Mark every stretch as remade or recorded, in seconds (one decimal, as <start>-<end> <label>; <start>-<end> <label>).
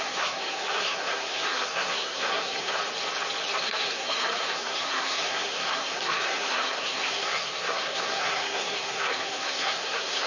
0.0-2.8 remade; 2.8-3.6 recorded; 3.6-10.3 remade